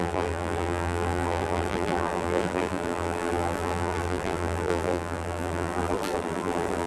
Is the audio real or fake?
fake